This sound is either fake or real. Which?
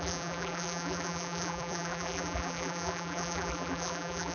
fake